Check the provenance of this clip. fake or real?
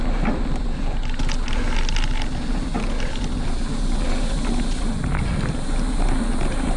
real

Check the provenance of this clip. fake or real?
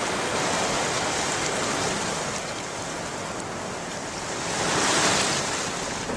real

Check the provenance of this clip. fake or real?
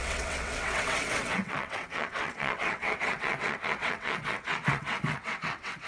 fake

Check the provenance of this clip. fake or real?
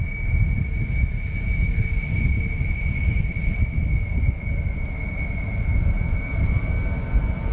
real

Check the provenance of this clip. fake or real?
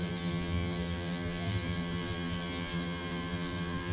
fake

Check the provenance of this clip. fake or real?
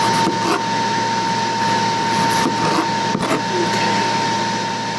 real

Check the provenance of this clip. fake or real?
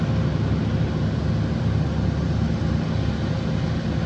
real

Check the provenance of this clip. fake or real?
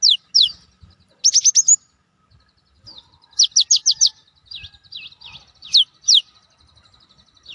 real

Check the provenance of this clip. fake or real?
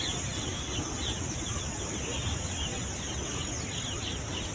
real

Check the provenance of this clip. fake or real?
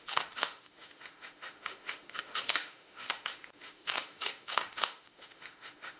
fake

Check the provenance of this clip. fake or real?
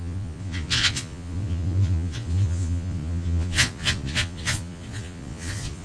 fake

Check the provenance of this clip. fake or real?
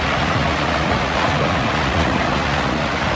fake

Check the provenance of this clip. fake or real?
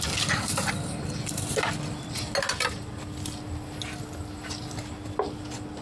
real